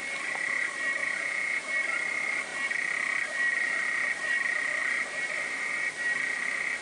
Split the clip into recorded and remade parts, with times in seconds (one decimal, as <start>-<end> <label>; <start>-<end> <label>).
0.0-1.0 recorded; 1.0-1.7 remade; 1.7-6.8 recorded